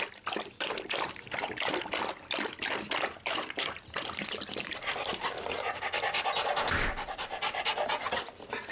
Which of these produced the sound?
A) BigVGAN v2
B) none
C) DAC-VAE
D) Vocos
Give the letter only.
A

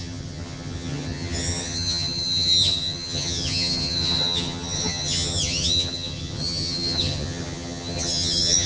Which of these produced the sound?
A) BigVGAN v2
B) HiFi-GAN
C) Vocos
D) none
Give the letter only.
B